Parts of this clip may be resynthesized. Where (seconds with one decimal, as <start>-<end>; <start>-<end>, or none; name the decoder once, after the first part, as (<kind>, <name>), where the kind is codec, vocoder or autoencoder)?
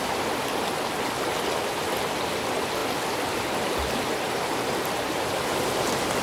none